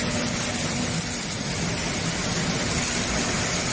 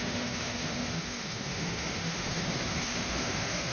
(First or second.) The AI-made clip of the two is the second